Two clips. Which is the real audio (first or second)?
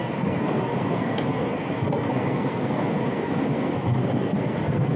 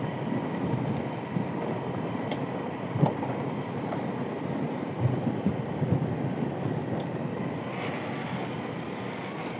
second